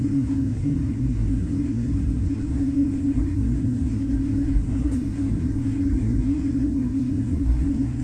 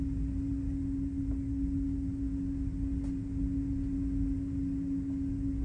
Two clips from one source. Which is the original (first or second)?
second